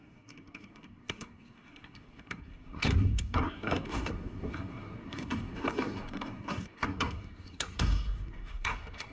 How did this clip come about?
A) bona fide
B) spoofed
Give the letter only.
B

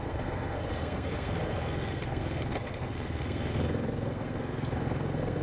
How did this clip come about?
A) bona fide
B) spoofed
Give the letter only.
B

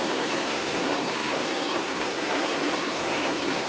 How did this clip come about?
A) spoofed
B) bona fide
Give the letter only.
A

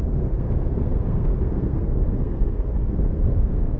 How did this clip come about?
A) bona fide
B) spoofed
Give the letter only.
B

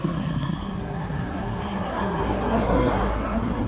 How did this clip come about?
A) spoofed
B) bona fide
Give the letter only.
A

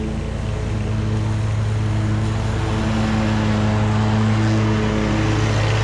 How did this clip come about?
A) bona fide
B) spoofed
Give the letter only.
A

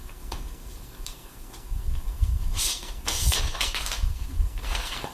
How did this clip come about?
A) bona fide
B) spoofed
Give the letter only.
B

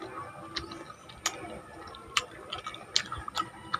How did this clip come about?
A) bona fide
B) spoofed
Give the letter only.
A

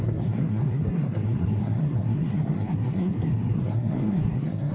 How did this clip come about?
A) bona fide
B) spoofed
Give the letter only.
B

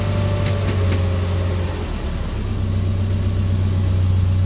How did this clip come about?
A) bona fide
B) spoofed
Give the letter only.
A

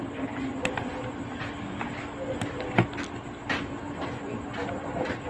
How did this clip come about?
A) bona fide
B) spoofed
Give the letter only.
A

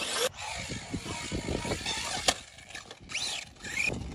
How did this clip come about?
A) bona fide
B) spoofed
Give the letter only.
A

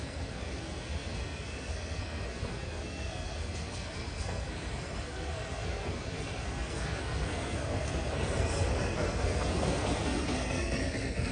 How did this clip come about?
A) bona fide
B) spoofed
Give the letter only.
B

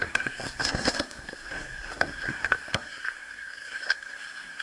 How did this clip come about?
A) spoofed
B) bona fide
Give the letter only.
A